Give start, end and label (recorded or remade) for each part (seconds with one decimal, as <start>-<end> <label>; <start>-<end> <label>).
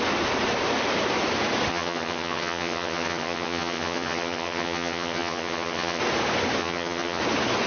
0.0-1.7 recorded; 1.7-6.0 remade; 6.0-6.6 recorded; 6.6-7.2 remade; 7.2-7.7 recorded